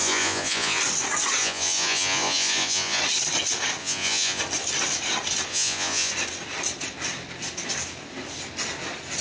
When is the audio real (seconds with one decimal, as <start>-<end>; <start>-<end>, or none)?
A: 0.8-1.4; 3.0-3.8; 4.4-5.5; 6.1-9.2